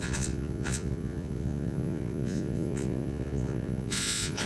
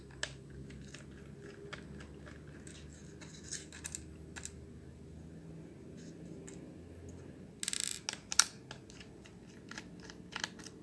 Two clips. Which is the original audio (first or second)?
second